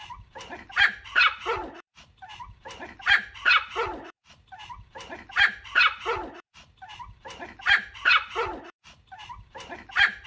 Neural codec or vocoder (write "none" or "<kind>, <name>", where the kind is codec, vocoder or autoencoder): vocoder, BigVGAN v2